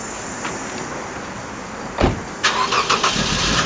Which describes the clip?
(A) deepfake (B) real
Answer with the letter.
B